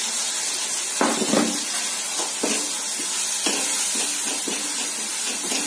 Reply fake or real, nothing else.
real